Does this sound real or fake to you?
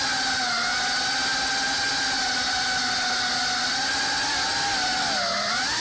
real